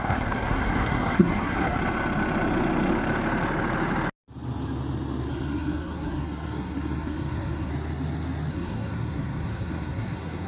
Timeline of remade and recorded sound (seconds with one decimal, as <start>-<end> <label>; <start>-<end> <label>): 0.0-1.8 remade; 1.8-5.3 recorded; 5.3-7.7 remade; 7.7-8.5 recorded; 8.5-10.5 remade